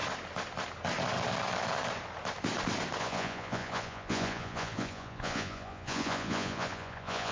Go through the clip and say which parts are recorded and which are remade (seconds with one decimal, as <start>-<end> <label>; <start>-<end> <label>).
0.0-3.0 recorded; 3.0-7.3 remade